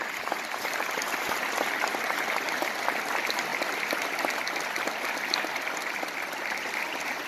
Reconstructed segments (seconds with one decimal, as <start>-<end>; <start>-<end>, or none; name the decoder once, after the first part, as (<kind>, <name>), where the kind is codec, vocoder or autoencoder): none